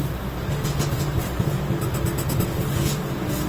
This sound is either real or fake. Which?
real